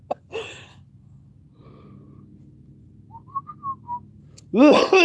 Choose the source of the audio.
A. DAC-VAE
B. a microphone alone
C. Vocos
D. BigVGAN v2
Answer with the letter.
B